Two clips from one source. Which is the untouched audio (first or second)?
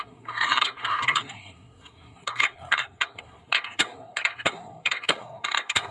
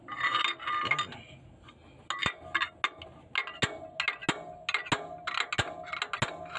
second